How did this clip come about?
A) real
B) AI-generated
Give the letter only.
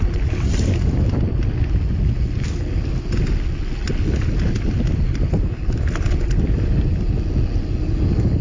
A